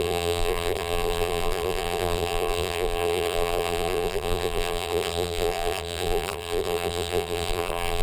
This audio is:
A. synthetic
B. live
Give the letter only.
A